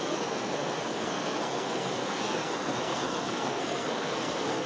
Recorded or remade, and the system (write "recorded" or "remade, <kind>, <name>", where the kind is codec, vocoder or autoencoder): remade, codec, SNAC